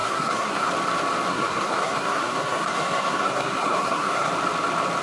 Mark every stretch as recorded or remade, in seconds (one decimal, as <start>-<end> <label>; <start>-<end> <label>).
0.0-0.7 remade; 0.7-1.3 recorded; 1.3-4.3 remade; 4.3-5.0 recorded